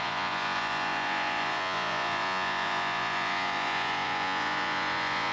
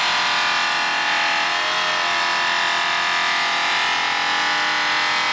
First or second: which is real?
second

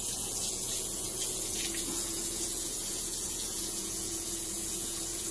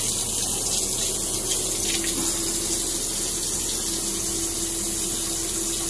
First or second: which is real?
second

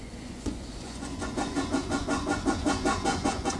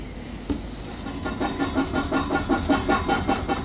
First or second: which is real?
second